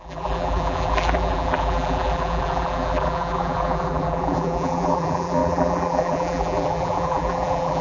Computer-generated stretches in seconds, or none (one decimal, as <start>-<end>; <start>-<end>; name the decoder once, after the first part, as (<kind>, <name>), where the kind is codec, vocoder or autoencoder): 0.0-7.8 (vocoder, BigVGAN v2)